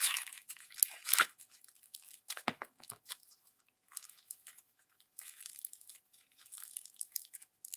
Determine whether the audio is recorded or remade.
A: remade